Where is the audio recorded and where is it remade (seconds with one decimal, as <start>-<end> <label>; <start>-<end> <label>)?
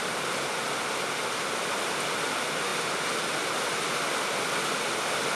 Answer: 0.0-5.4 recorded